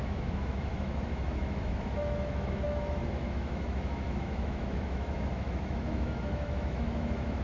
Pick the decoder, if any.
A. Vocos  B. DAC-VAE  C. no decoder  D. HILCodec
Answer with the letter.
B